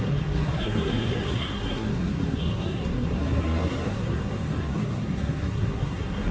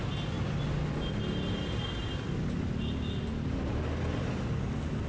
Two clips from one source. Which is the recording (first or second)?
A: second